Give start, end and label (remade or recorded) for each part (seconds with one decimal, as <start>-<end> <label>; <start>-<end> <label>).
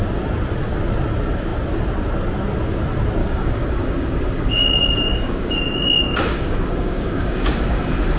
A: 0.0-3.2 recorded; 3.2-8.2 remade